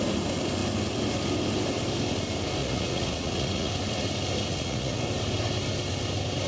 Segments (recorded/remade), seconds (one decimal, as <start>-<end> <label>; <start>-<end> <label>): 0.0-2.6 recorded; 2.6-3.7 remade; 3.7-4.5 recorded; 4.5-5.0 remade; 5.0-6.5 recorded